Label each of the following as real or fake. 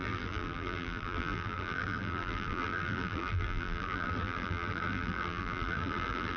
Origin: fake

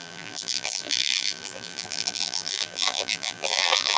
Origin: fake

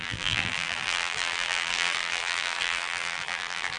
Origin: fake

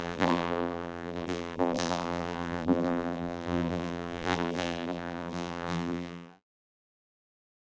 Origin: fake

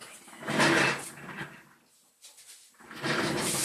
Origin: real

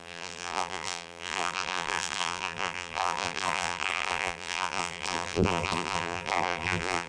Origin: fake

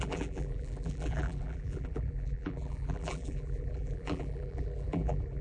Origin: fake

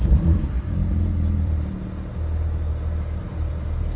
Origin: fake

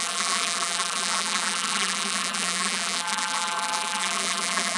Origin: fake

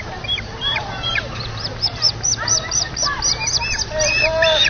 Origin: fake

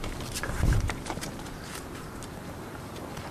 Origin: fake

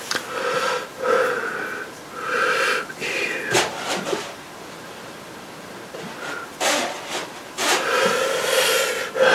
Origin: fake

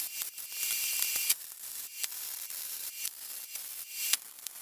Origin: fake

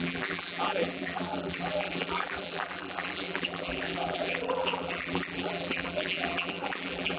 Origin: fake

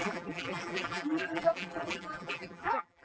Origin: fake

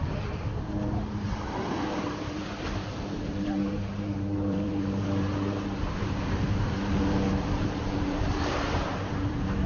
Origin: fake